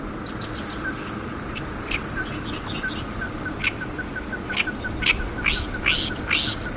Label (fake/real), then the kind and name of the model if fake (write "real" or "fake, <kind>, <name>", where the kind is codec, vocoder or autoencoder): real